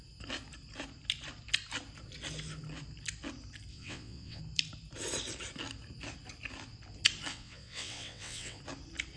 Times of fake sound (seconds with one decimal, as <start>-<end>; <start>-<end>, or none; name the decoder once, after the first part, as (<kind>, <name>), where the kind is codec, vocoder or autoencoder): 3.7-4.4 (vocoder, WaveNeXt); 7.3-8.6